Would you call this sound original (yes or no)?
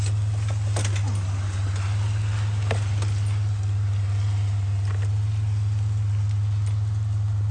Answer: yes